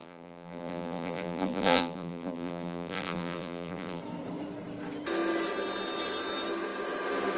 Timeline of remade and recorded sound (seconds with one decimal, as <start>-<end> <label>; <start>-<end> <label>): 0.0-4.0 remade; 4.0-7.4 recorded